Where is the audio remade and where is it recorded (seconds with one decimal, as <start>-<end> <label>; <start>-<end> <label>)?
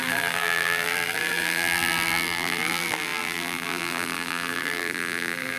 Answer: 0.0-5.6 remade